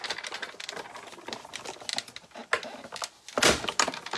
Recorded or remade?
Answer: recorded